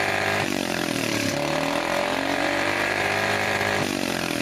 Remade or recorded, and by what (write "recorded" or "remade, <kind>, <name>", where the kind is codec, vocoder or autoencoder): remade, vocoder, BigVGAN v2